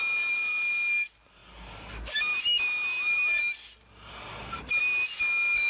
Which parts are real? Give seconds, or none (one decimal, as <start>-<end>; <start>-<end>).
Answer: 0.0-5.7